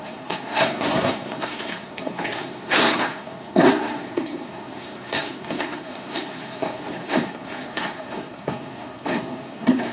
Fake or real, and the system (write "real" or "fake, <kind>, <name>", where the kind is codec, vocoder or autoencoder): fake, codec, SNAC